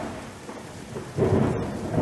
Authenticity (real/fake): real